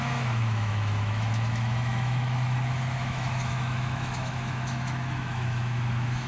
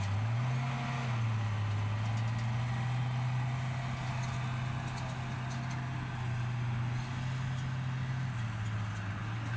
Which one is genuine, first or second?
second